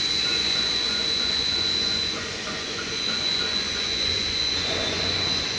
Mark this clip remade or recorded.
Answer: remade